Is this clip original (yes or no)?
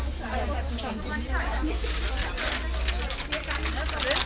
yes